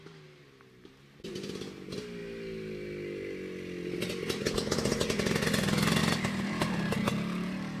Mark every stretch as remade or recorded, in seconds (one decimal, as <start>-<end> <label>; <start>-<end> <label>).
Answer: 0.0-7.8 recorded